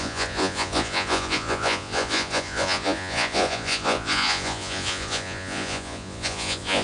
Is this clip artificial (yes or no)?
yes